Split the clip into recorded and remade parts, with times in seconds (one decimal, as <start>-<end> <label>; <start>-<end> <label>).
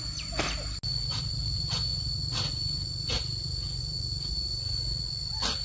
0.0-5.6 recorded